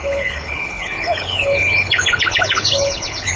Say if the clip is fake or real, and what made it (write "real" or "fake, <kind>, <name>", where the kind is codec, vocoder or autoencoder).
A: fake, codec, HILCodec